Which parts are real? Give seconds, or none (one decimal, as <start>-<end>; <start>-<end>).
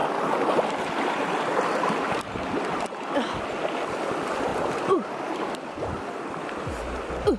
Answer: 0.0-4.0; 4.5-5.3